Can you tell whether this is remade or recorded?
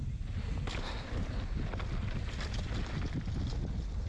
recorded